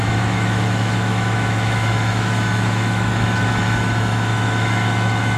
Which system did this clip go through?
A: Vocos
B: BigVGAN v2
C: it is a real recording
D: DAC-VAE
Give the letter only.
D